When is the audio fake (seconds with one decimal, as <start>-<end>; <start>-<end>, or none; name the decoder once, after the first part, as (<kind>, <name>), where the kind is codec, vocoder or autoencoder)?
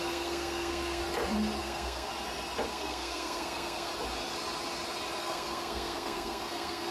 0.0-1.0 (codec, SNAC); 1.6-2.1; 2.7-3.9; 5.2-6.9